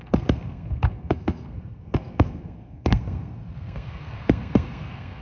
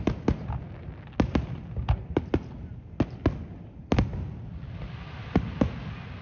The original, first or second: second